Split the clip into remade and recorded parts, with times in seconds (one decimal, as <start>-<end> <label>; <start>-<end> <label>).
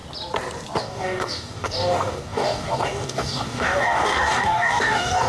0.0-0.8 recorded; 0.8-5.3 remade